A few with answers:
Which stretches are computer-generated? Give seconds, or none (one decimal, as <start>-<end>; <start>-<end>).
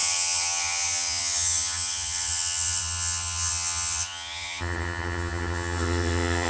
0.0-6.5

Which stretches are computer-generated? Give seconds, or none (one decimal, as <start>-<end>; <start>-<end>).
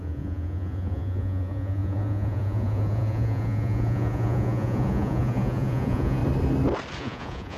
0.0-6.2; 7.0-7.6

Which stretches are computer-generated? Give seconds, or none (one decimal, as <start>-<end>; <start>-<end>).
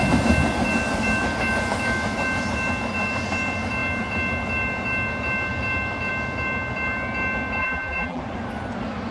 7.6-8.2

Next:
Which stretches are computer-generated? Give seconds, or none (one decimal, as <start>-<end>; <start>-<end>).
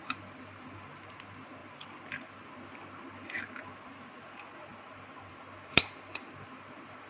none